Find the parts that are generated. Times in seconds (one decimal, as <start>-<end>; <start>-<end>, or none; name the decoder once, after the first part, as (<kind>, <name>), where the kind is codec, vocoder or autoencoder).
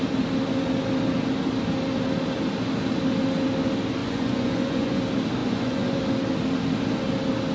4.0-5.0 (vocoder, Vocos); 5.4-6.0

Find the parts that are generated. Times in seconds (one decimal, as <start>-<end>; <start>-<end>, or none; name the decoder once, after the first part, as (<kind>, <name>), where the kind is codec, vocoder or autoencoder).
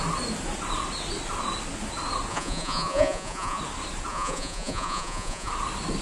2.3-3.6 (vocoder, Vocos); 4.1-5.5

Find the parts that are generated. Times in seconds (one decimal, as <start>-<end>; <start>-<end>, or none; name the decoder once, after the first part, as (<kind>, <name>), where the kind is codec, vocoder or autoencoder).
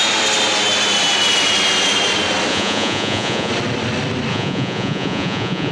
2.5-3.5 (vocoder, Vocos); 4.3-5.7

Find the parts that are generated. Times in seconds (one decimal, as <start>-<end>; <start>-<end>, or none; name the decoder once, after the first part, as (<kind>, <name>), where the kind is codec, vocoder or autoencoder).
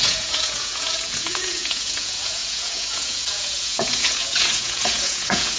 0.0-5.6 (vocoder, Vocos)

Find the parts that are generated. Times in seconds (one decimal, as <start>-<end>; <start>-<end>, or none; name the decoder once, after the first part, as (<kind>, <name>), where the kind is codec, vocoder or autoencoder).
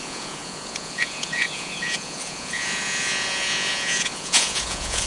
0.0-5.1 (vocoder, Vocos)